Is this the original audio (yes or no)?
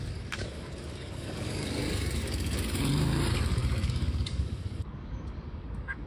no